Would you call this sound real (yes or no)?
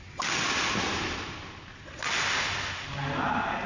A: yes